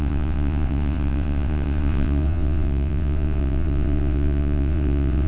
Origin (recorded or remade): remade